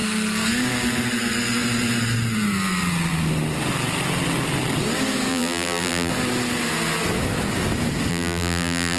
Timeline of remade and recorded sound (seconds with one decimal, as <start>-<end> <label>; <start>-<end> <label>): 0.0-5.3 recorded; 5.3-6.1 remade; 6.1-8.1 recorded; 8.1-9.0 remade